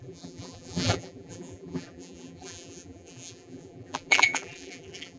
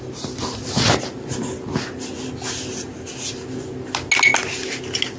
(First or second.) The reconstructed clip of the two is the first